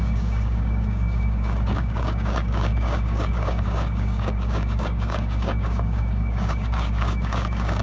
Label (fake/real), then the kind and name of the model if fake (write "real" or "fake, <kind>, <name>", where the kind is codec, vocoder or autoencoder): fake, codec, DAC